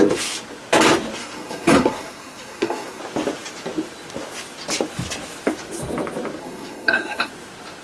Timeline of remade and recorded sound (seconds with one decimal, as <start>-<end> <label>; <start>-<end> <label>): 0.0-1.2 recorded; 1.2-3.0 remade; 3.0-6.4 recorded; 6.4-7.3 remade; 7.3-7.8 recorded